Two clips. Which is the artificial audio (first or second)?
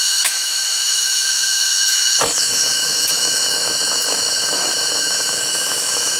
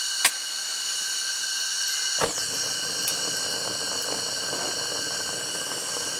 first